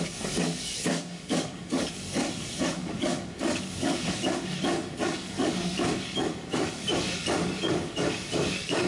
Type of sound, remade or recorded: remade